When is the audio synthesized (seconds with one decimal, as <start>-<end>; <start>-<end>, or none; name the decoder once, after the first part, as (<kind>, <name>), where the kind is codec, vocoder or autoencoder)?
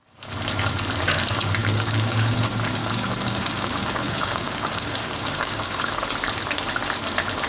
1.6-2.4 (codec, DAC); 2.8-5.9